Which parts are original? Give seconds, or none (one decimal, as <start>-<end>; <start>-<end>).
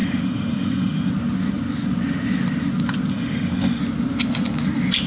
1.1-3.1; 3.8-5.1